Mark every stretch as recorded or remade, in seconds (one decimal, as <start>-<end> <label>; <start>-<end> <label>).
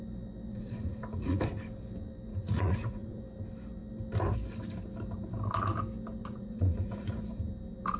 0.0-0.5 recorded; 0.5-1.4 remade; 1.4-2.3 recorded; 2.3-3.2 remade; 3.2-6.2 recorded; 6.2-7.3 remade; 7.3-8.0 recorded